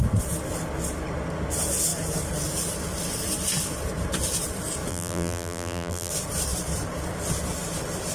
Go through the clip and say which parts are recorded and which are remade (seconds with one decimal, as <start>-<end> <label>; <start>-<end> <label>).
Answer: 0.0-4.9 recorded; 4.9-6.1 remade; 6.1-8.1 recorded